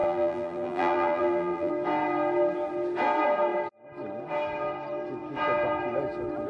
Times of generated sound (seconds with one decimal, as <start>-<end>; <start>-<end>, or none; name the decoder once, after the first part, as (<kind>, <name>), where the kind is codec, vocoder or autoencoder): 0.0-1.7 (vocoder, BigVGAN v2)